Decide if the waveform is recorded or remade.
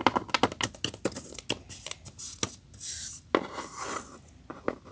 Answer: recorded